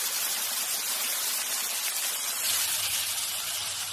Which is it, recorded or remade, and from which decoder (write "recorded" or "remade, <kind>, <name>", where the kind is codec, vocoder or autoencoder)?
recorded